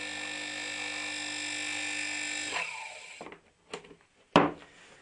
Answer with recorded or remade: recorded